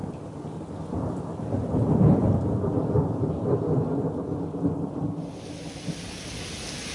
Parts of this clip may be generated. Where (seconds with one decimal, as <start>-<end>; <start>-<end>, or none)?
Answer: none